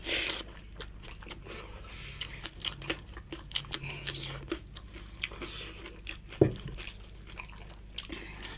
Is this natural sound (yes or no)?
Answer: yes